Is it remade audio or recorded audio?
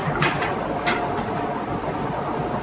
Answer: recorded